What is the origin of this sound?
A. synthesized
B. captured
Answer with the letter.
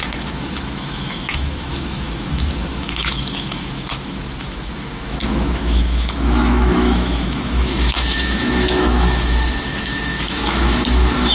A